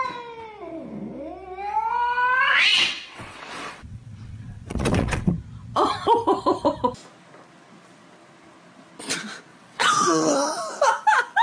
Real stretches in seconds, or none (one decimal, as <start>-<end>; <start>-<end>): 0.0-2.7; 5.3-9.5; 10.3-11.4

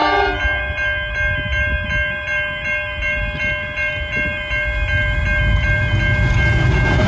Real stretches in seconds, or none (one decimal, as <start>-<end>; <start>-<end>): 0.0-7.1

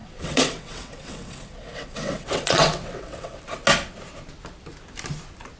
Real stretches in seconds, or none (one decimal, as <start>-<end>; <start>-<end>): 3.4-5.6

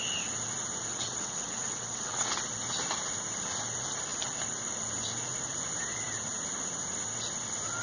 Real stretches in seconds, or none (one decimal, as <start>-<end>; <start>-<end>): 0.0-0.9; 2.3-7.8

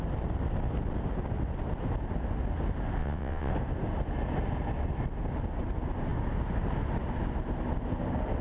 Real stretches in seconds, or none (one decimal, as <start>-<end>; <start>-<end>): 0.0-3.0; 3.5-8.4

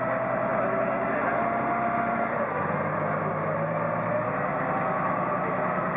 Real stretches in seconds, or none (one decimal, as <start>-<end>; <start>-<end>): 0.0-6.0

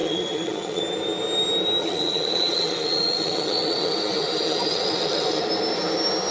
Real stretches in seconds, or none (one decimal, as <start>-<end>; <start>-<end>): 0.8-1.8; 5.4-6.3